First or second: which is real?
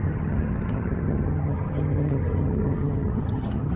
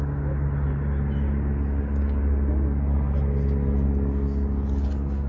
second